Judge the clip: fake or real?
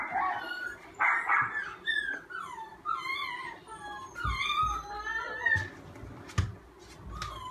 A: real